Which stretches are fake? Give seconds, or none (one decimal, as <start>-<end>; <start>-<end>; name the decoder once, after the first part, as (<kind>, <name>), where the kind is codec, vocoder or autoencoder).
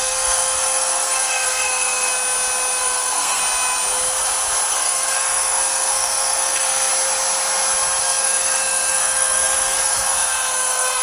0.0-2.1 (codec, SNAC); 2.8-3.4; 4.7-6.9; 8.0-11.0